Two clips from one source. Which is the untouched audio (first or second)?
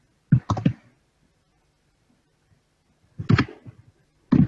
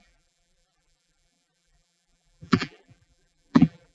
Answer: first